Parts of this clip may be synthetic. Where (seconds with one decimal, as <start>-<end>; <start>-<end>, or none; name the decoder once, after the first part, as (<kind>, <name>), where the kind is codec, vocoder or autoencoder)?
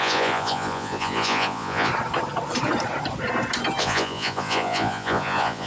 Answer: 0.0-1.9 (vocoder, Vocos); 3.8-5.7